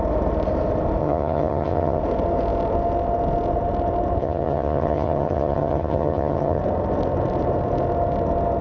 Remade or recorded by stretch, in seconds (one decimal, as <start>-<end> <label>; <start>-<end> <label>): 0.0-1.0 recorded; 1.0-2.0 remade; 2.0-4.2 recorded; 4.2-6.6 remade; 6.6-8.6 recorded